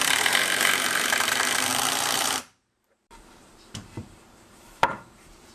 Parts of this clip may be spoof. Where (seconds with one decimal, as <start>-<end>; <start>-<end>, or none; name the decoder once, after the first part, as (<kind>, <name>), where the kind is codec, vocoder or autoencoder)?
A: 0.0-5.5 (vocoder, BigVGAN v2)